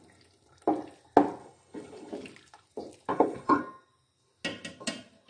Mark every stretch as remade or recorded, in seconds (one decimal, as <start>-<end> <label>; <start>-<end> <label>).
0.0-1.4 recorded; 1.4-2.1 remade; 2.1-3.1 recorded; 3.1-3.6 remade; 3.6-5.3 recorded